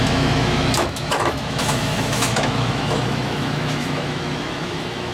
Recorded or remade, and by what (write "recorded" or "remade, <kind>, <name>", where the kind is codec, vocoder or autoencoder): remade, autoencoder, DAC-VAE